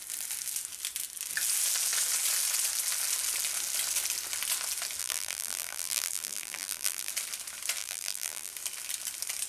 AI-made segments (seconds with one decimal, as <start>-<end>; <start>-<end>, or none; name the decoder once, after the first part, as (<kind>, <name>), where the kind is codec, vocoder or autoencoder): 5.0-7.1 (vocoder, BigVGAN v2); 7.8-8.5